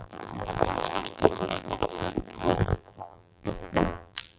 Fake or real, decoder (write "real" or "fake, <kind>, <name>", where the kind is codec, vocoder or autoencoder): fake, vocoder, BigVGAN v2